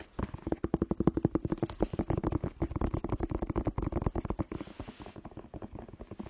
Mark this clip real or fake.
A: real